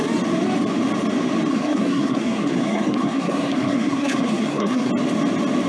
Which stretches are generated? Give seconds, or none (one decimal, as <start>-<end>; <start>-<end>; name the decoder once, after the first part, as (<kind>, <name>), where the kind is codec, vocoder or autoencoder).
1.5-4.9 (codec, SNAC)